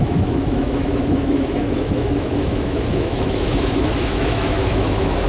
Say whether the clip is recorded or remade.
remade